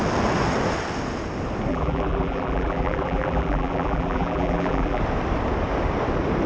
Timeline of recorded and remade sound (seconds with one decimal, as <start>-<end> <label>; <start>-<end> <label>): 0.0-1.7 recorded; 1.7-5.0 remade; 5.0-6.5 recorded